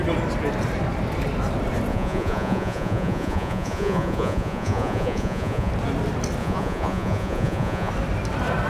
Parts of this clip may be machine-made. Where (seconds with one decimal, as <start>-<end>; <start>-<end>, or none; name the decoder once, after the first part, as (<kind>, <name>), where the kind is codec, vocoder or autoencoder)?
1.9-5.7 (vocoder, Vocos); 6.4-7.9